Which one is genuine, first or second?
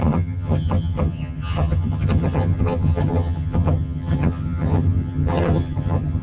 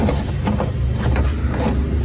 second